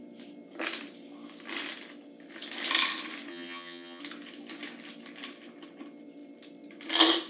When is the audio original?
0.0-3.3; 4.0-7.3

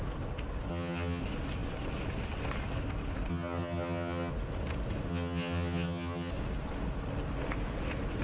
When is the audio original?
0.0-0.7; 1.2-3.3; 4.3-5.1; 6.3-8.2